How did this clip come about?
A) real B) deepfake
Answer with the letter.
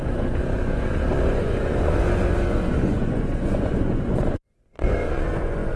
B